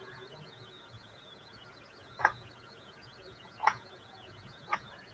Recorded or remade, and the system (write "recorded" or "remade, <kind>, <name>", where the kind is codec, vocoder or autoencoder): remade, vocoder, Vocos